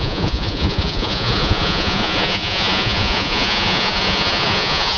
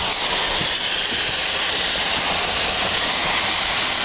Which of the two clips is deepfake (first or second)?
first